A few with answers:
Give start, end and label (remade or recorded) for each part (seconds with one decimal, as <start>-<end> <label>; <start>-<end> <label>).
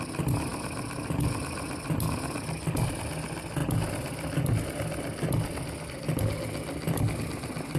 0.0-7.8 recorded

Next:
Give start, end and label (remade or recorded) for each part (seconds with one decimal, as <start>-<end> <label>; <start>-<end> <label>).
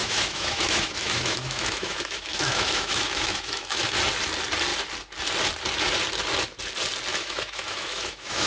0.0-4.0 remade; 4.0-7.1 recorded; 7.1-8.5 remade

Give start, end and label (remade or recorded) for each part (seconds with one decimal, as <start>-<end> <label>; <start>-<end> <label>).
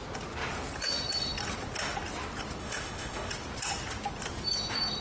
0.0-2.6 recorded; 2.6-3.3 remade; 3.3-5.0 recorded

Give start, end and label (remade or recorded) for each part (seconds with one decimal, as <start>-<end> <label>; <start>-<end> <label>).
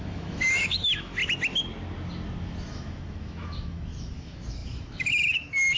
0.0-1.2 remade; 1.2-2.6 recorded; 2.6-5.8 remade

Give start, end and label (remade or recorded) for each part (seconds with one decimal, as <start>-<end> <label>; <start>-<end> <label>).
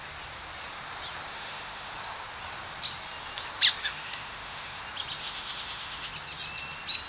0.0-1.3 recorded; 1.3-1.9 remade; 1.9-3.8 recorded; 3.8-4.8 remade; 4.8-5.2 recorded; 5.2-6.1 remade; 6.1-7.1 recorded